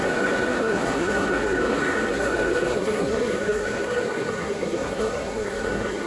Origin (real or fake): fake